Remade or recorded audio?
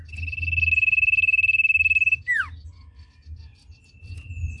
recorded